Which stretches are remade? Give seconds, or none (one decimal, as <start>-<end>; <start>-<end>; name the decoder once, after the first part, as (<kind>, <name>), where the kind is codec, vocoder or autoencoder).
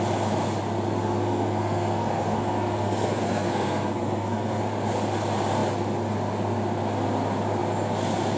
1.0-4.6 (codec, SNAC)